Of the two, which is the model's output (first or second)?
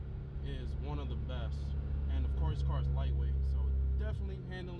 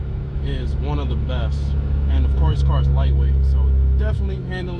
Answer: second